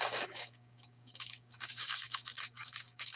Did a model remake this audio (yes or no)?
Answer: yes